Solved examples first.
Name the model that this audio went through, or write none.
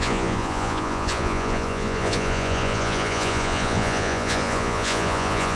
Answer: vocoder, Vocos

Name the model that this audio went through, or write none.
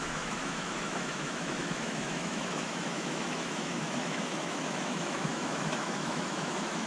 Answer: autoencoder, DAC-VAE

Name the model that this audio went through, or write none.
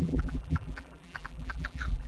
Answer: vocoder, BigVGAN v2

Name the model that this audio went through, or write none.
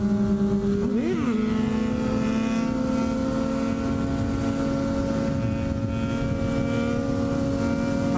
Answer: none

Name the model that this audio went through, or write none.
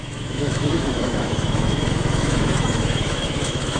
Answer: autoencoder, DAC-VAE